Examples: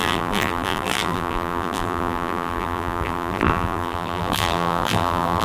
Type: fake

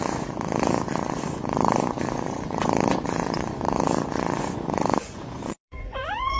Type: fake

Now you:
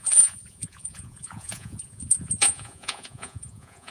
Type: fake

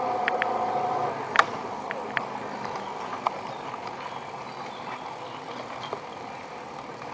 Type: real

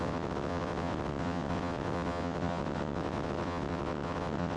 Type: fake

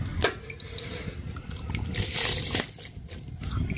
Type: real